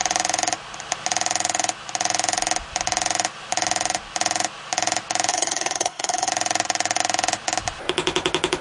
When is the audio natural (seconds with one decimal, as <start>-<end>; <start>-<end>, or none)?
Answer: 0.0-5.3; 6.3-8.6